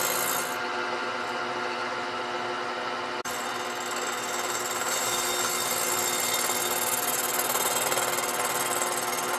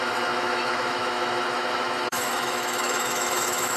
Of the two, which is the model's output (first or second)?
second